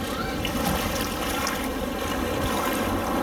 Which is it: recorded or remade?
recorded